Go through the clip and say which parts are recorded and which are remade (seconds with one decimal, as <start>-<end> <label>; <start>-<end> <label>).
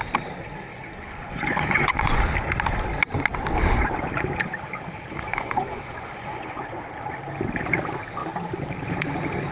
0.0-0.7 recorded; 0.7-2.2 remade; 2.2-5.3 recorded; 5.3-6.6 remade; 6.6-9.5 recorded